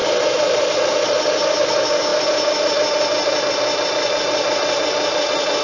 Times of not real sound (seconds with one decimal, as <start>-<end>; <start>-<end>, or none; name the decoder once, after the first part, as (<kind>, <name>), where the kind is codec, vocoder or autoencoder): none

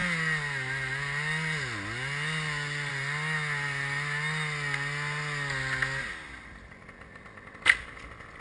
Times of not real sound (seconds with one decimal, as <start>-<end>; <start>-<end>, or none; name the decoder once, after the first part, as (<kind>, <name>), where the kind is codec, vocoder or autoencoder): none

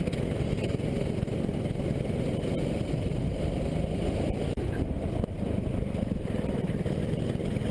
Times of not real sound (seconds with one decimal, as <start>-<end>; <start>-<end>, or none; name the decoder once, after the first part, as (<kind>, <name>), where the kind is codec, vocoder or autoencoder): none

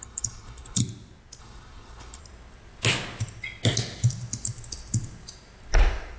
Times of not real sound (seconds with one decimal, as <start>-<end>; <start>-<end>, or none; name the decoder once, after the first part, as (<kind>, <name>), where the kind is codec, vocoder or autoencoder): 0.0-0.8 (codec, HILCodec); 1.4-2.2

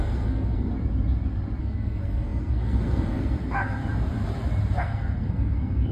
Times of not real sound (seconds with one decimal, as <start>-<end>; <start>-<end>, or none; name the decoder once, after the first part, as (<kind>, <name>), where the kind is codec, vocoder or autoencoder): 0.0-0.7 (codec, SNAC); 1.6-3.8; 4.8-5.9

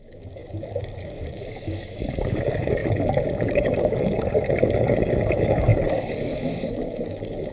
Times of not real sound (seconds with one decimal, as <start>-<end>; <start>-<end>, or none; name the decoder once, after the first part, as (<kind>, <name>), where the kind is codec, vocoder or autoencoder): 0.0-7.5 (codec, DAC)

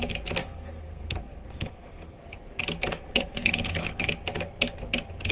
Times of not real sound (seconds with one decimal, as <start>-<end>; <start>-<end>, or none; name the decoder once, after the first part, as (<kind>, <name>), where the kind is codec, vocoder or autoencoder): 0.4-2.2 (codec, SNAC); 2.9-4.1